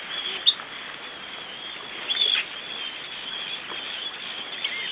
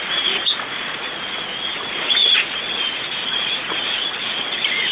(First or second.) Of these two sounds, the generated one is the second